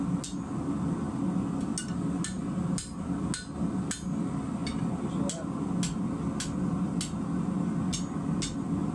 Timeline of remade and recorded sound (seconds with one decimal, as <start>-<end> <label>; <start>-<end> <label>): 0.0-8.9 recorded